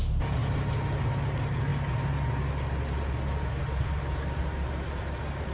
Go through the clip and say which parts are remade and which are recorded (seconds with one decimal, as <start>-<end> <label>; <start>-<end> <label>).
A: 0.0-5.5 recorded